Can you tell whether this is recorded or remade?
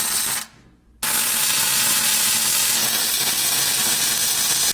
recorded